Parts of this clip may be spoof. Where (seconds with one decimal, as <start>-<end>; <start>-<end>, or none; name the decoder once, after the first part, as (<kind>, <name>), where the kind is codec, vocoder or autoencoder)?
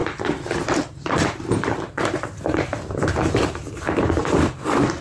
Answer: 0.0-4.2 (vocoder, BigVGAN v2)